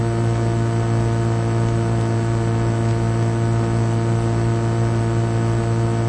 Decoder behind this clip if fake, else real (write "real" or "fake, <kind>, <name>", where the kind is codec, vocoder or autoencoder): real